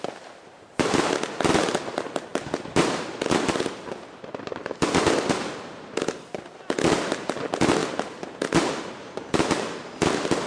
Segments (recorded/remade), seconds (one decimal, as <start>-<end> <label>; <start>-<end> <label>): 0.0-7.8 remade; 7.8-8.7 recorded; 8.7-10.5 remade

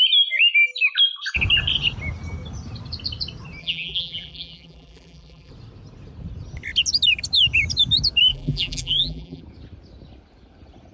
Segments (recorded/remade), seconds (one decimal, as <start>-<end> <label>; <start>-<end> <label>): 0.0-3.6 recorded; 3.6-5.5 remade; 5.5-8.3 recorded; 8.3-9.4 remade; 9.4-10.9 recorded

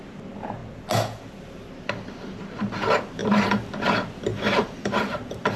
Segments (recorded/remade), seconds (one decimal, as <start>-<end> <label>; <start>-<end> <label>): 0.0-3.2 recorded; 3.2-3.7 remade; 3.7-4.3 recorded; 4.3-5.6 remade

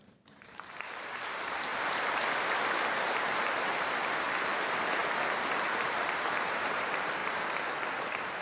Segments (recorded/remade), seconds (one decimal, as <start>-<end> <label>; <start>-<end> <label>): 0.0-1.7 remade; 1.7-3.5 recorded; 3.5-5.0 remade; 5.0-5.5 recorded; 5.5-8.4 remade

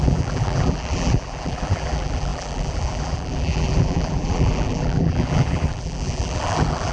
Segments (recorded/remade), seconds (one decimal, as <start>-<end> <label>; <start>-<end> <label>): 0.0-6.9 remade